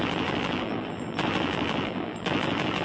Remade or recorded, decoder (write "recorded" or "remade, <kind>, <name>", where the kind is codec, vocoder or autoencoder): remade, vocoder, BigVGAN v2